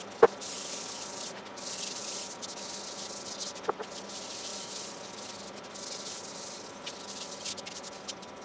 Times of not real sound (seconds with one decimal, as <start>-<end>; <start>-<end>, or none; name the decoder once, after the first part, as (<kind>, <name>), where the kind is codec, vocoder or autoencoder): none